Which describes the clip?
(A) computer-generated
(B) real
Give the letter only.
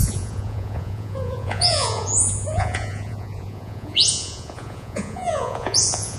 A